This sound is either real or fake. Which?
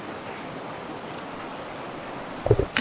real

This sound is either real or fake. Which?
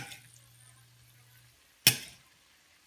real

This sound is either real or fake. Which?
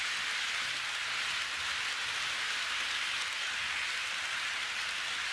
real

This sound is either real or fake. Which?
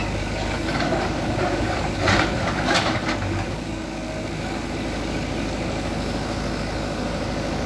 fake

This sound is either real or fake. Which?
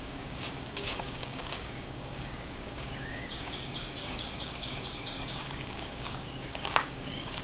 fake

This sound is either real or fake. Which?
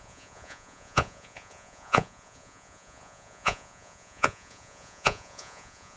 fake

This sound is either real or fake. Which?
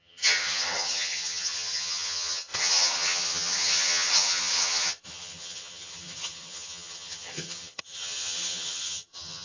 fake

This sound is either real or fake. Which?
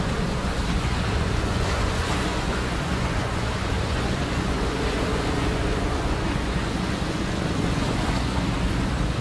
fake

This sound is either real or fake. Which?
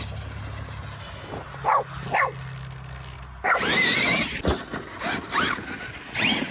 real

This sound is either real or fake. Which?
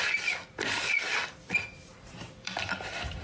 real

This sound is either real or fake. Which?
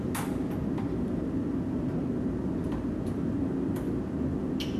real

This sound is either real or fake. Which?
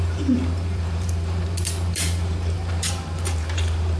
fake